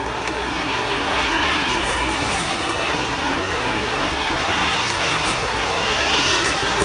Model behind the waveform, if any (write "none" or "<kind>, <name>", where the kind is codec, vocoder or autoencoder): codec, SNAC